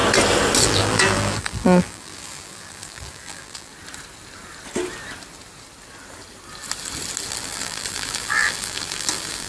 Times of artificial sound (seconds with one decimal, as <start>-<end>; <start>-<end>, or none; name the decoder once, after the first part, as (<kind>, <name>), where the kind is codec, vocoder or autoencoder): 0.6-3.7 (vocoder, BigVGAN v2); 7.3-9.5